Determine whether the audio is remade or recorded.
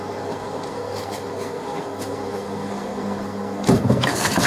remade